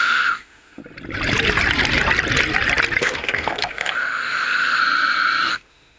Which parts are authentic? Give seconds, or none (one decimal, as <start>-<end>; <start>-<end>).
0.8-3.0; 4.8-5.5